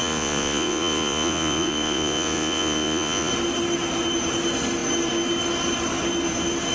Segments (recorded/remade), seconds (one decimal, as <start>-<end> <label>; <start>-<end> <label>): 0.0-3.3 remade; 3.3-6.7 recorded